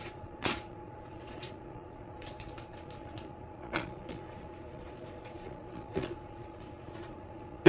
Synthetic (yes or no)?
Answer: yes